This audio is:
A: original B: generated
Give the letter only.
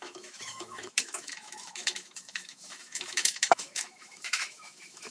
B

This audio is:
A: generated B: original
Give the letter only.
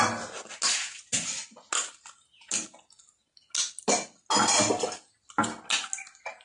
B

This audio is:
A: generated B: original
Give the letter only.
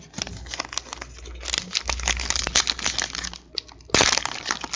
B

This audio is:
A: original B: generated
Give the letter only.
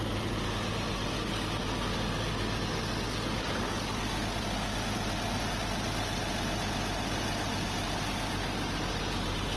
A